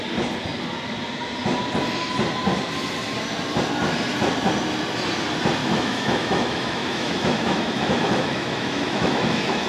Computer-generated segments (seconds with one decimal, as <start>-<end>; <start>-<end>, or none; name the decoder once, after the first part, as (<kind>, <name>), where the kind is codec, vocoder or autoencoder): 5.6-9.7 (autoencoder, DAC-VAE)